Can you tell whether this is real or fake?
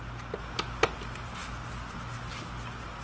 real